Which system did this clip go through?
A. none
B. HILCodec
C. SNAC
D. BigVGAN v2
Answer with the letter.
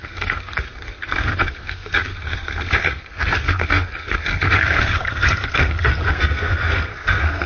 C